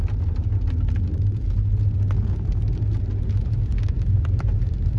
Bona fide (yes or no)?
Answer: yes